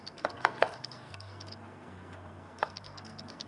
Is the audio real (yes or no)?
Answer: no